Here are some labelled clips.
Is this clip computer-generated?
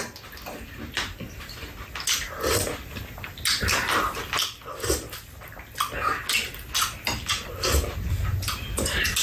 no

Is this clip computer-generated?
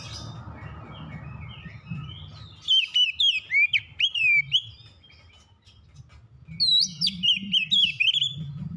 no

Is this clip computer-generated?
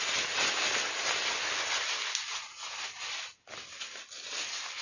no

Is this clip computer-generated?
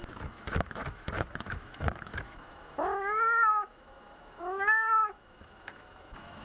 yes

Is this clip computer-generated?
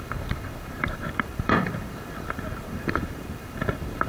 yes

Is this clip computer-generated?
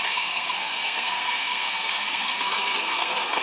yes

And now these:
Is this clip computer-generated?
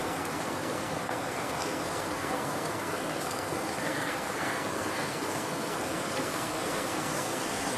yes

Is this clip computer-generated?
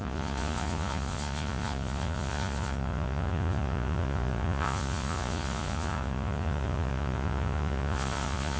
yes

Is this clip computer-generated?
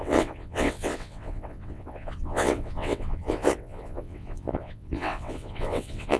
yes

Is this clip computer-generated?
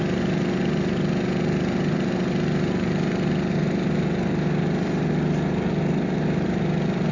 no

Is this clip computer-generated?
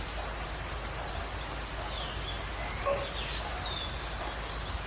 no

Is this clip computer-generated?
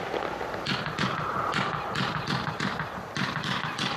no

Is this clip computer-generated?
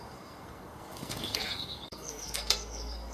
yes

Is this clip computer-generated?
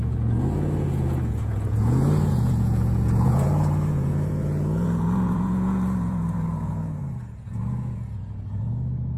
yes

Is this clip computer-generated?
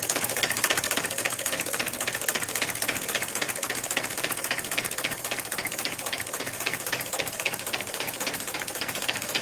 yes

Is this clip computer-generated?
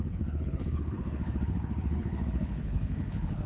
yes